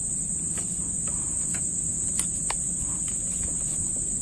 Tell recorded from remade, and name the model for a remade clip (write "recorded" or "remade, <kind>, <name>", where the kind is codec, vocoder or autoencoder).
recorded